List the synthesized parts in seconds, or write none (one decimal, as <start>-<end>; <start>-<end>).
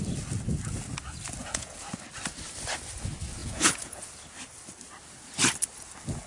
1.4-1.9; 3.4-4.0